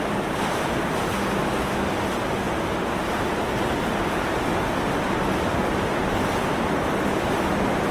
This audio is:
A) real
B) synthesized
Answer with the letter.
A